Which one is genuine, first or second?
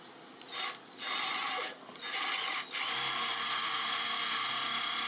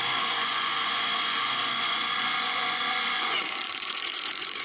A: first